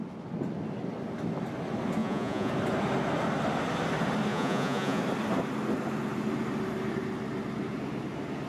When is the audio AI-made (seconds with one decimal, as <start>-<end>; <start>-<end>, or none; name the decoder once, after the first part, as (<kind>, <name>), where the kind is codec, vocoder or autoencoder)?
2.0-2.5 (vocoder, Vocos); 4.3-5.0